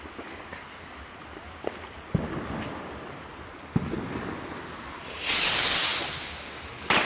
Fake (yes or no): no